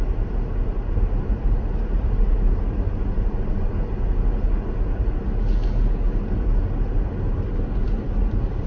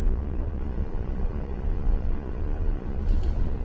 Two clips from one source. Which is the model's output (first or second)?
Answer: second